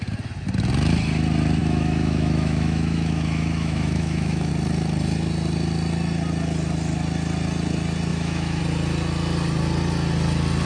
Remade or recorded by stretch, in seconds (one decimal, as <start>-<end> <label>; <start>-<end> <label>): 0.0-1.6 recorded; 1.6-4.5 remade; 4.5-8.1 recorded; 8.1-8.6 remade; 8.6-10.7 recorded